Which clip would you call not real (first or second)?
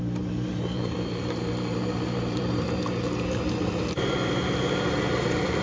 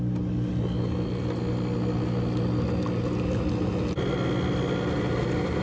first